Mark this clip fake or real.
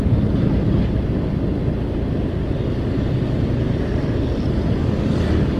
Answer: real